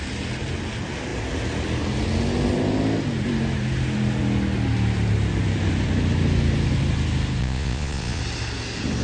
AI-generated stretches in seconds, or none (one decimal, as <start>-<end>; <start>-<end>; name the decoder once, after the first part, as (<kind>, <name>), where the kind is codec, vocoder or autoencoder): 7.4-8.2 (vocoder, Vocos)